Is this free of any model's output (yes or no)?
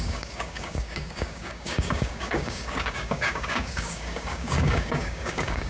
no